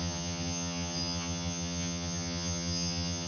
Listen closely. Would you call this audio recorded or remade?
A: remade